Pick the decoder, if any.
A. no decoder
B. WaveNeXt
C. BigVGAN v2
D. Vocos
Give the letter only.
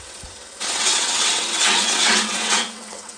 B